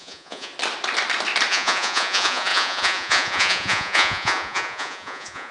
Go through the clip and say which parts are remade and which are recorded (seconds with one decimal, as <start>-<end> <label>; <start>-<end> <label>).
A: 0.0-0.5 remade; 0.5-1.5 recorded; 1.5-5.5 remade